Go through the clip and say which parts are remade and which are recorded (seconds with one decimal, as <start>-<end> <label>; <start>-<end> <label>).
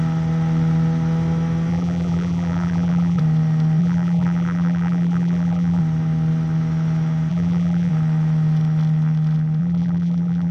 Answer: 0.0-1.7 recorded; 1.7-3.2 remade; 3.2-3.8 recorded; 3.8-5.8 remade; 5.8-7.3 recorded; 7.3-7.9 remade; 7.9-9.6 recorded; 9.6-10.5 remade